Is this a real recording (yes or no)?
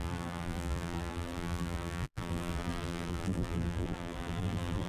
no